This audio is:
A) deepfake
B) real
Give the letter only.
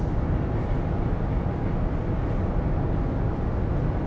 B